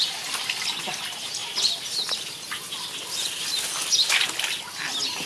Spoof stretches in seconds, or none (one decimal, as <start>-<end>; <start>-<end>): none